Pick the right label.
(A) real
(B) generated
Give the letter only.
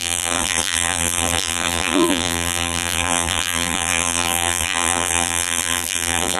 B